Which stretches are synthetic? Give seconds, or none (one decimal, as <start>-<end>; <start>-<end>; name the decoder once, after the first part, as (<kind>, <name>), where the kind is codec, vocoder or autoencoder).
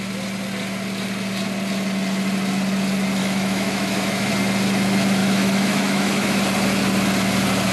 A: 3.2-4.3 (autoencoder, DAC-VAE); 5.2-6.4